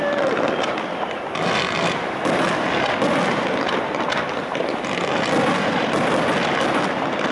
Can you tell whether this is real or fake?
real